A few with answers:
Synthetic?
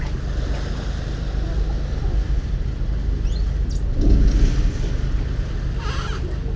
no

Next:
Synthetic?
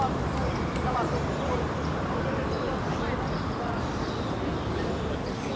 no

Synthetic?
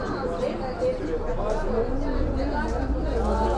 no